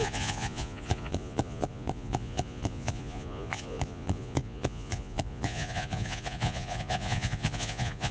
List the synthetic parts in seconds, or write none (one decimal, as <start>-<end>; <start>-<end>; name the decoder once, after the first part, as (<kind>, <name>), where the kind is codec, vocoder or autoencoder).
0.0-8.1 (vocoder, Vocos)